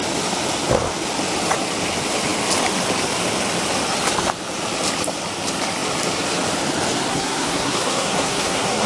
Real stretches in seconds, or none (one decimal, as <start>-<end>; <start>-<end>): 0.0-7.1